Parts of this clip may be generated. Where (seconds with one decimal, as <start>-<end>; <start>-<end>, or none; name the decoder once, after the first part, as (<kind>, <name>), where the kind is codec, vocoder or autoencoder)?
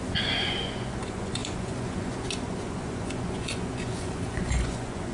0.0-5.1 (vocoder, Vocos)